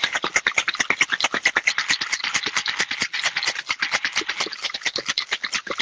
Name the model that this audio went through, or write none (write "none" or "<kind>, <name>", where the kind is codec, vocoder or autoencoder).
none